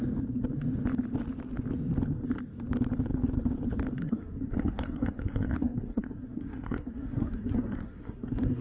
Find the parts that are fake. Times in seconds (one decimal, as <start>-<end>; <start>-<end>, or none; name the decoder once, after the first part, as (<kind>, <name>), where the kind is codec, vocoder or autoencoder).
4.0-8.6 (codec, SNAC)